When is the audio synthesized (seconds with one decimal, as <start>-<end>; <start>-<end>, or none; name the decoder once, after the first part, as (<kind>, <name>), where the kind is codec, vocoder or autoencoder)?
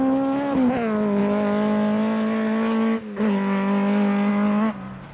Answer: none